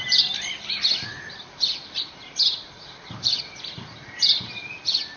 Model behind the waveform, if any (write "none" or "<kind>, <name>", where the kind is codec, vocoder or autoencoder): vocoder, BigVGAN v2